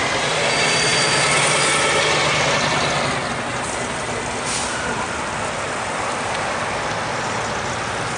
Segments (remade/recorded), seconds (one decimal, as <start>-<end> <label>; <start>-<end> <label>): 0.0-8.2 recorded